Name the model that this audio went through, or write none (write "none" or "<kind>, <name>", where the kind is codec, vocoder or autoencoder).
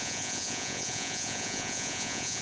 vocoder, Vocos